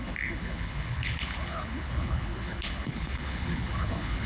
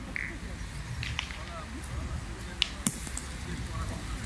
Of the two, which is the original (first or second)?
second